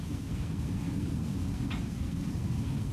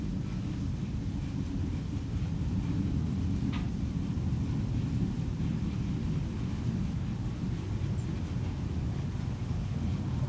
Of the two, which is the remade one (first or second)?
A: first